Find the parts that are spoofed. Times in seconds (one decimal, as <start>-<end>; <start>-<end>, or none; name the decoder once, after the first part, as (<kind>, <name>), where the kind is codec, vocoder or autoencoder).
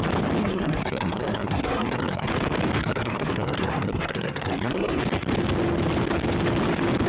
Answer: 0.4-2.3 (codec, SNAC); 2.8-5.0